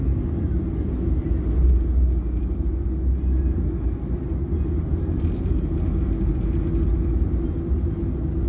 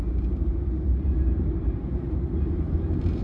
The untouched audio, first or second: first